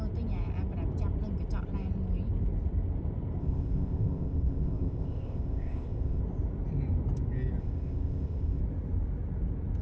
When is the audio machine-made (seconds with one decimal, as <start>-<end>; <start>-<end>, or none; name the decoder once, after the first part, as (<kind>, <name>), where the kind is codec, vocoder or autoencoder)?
3.4-6.2 (codec, ZipCodec); 7.6-8.6